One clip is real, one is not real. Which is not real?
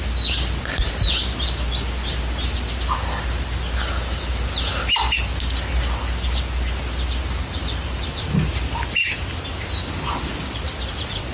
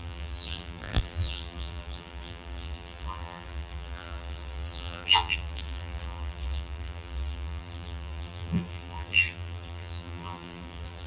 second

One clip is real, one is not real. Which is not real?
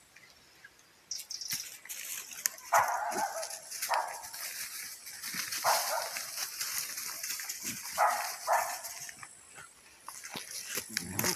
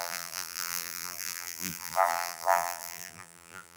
second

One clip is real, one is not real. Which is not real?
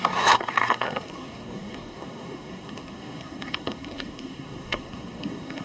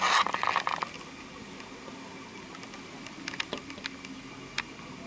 first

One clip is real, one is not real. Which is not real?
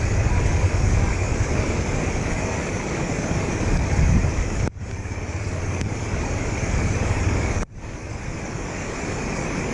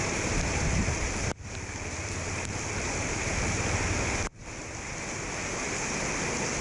first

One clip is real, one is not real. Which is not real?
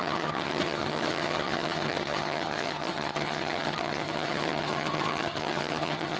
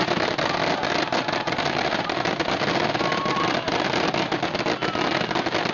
first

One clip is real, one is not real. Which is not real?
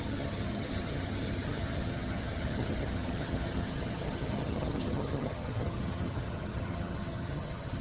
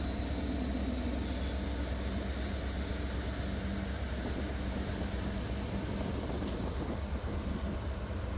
first